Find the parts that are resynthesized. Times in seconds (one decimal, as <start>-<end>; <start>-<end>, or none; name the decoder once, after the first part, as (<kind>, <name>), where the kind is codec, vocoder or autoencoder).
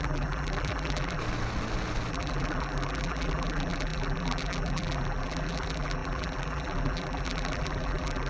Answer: 0.0-1.2 (vocoder, BigVGAN v2); 2.1-8.3